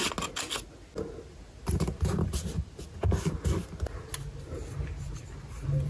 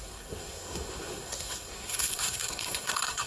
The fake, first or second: second